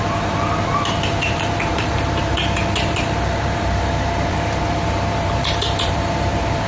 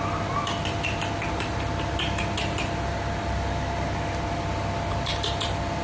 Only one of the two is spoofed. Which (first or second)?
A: first